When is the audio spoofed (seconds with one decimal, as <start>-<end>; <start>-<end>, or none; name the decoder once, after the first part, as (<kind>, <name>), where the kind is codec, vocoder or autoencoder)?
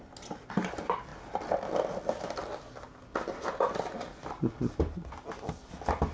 none